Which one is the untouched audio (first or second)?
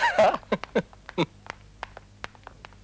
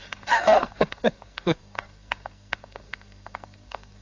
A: first